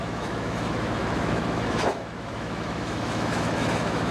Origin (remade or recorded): remade